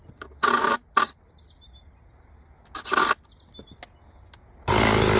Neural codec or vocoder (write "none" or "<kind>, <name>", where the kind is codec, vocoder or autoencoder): none